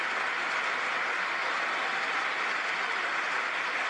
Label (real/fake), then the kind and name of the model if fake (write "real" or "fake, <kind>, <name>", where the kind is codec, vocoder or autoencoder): real